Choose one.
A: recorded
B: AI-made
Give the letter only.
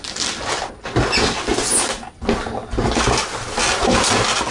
A